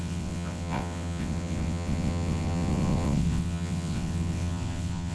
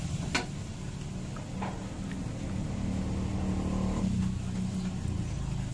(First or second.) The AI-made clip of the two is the first